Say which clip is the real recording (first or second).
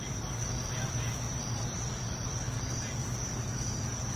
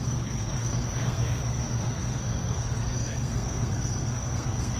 first